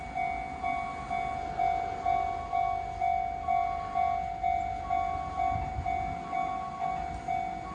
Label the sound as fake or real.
real